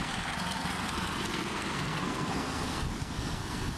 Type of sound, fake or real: fake